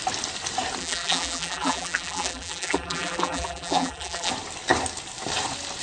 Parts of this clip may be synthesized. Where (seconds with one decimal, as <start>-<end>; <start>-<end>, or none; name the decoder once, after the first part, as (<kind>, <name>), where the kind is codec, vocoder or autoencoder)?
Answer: 0.8-4.3 (vocoder, BigVGAN v2)